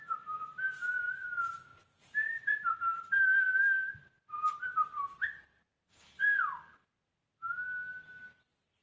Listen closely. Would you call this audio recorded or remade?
recorded